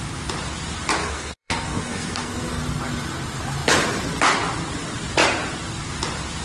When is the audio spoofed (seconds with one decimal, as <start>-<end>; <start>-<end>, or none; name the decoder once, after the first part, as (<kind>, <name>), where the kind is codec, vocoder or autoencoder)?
1.0-2.6 (codec, SNAC)